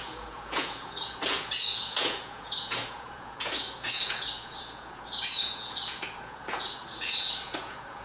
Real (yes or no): no